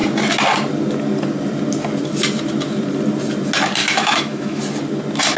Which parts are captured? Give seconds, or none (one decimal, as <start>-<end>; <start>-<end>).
0.0-3.8; 4.6-5.4